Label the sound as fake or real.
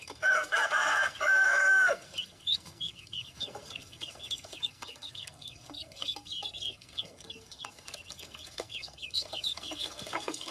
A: fake